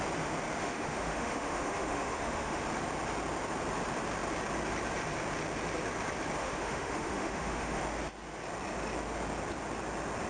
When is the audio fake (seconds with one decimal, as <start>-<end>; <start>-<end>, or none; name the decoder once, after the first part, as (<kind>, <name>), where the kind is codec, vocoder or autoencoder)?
0.6-2.6 (autoencoder, DAC-VAE); 6.4-7.8